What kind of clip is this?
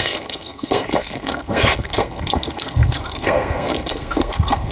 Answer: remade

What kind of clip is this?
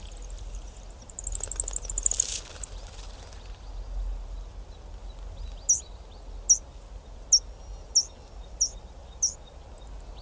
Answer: recorded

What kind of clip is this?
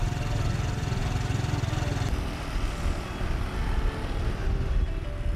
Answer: recorded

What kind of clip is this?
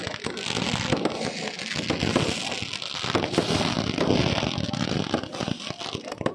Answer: recorded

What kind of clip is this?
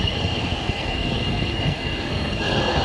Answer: remade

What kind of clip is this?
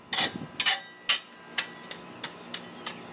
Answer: recorded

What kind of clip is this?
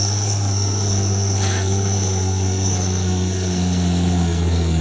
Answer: remade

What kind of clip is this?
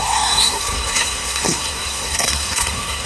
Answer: remade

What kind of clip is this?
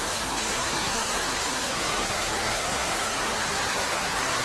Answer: remade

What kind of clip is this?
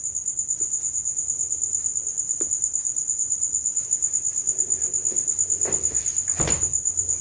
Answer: recorded